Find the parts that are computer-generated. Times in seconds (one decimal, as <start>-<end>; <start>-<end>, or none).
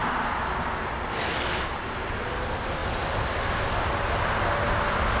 none